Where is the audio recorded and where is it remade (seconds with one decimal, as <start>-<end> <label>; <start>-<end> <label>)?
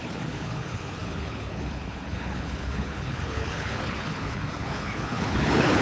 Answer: 0.0-5.8 remade